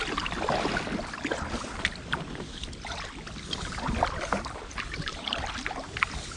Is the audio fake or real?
real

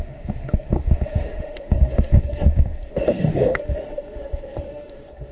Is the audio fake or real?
fake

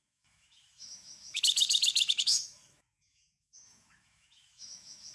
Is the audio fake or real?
fake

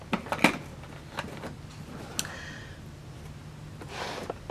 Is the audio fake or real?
real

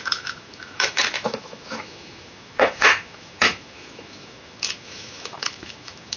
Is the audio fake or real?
fake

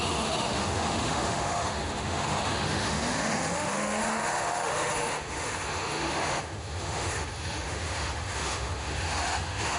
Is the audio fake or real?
fake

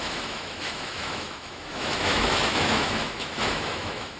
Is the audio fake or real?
fake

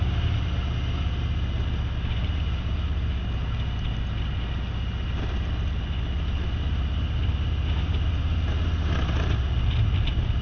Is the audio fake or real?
real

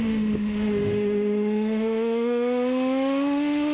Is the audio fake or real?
fake